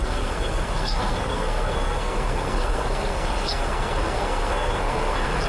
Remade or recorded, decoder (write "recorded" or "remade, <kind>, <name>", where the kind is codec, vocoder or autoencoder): remade, codec, SNAC